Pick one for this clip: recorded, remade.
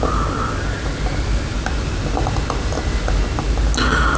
recorded